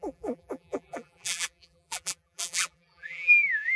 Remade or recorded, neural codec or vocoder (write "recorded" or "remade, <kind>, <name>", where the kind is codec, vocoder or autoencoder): remade, vocoder, BigVGAN v2